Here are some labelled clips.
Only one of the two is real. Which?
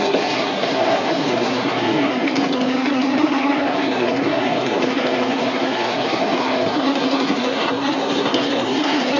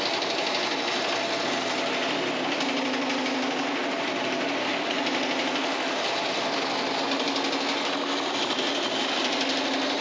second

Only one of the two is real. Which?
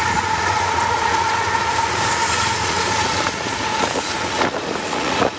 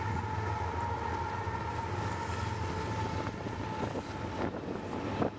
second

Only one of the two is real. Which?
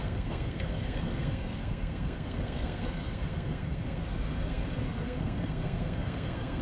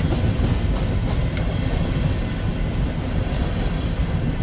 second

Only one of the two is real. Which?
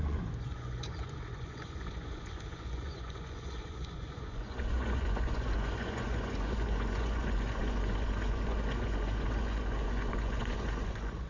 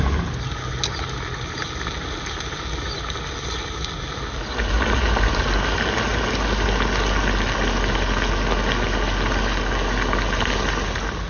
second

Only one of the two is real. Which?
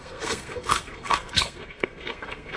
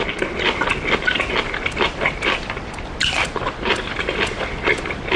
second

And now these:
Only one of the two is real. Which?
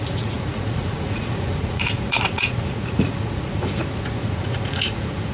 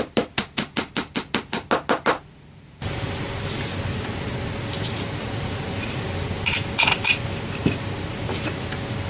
second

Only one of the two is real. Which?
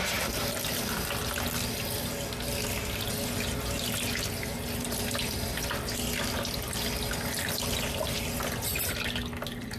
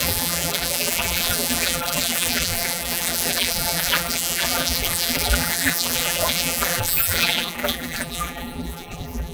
first